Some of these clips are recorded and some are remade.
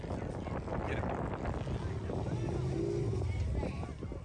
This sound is recorded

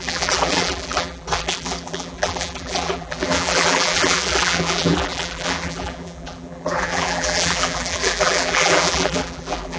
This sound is remade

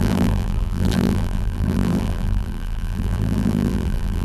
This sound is remade